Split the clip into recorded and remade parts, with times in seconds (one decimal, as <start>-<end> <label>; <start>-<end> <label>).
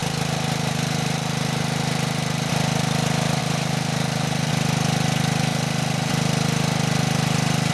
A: 0.0-2.5 remade; 2.5-3.4 recorded; 3.4-4.5 remade; 4.5-5.5 recorded; 5.5-6.1 remade; 6.1-7.7 recorded